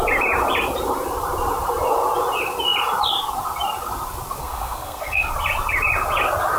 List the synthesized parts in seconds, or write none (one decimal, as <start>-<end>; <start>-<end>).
4.4-5.3